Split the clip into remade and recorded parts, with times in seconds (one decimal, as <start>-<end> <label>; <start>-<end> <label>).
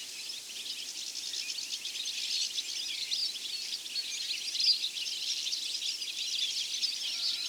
0.0-7.5 recorded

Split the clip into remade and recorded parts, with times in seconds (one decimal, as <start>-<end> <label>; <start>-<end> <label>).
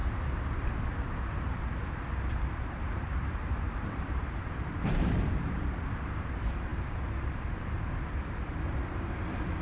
0.0-2.3 recorded; 2.3-4.2 remade; 4.2-4.9 recorded; 4.9-9.6 remade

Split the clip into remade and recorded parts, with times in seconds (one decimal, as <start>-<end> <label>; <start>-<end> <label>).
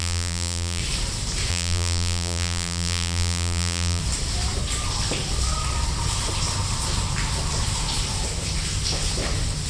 0.0-0.8 remade; 0.8-1.5 recorded; 1.5-4.0 remade; 4.0-9.7 recorded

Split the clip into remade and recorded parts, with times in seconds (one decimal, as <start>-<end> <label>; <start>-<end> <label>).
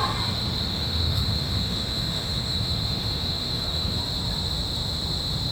0.0-0.7 recorded; 0.7-4.0 remade; 4.0-5.5 recorded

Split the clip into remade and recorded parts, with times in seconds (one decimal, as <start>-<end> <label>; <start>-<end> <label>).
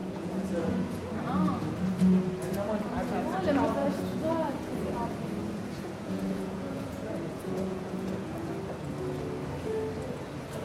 0.0-1.0 remade; 1.0-3.8 recorded; 3.8-4.7 remade; 4.7-5.4 recorded; 5.4-8.5 remade; 8.5-10.6 recorded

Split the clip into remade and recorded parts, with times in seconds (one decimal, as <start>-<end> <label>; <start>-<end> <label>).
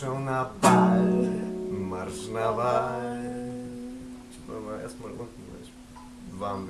0.0-6.7 recorded